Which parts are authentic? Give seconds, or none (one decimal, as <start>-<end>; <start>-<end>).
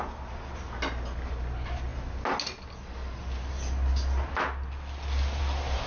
0.0-5.9